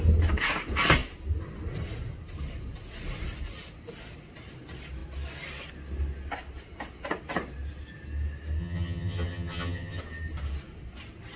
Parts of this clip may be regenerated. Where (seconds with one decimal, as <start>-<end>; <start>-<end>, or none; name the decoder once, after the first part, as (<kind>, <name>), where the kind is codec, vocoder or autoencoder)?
8.6-10.0 (vocoder, HiFi-GAN)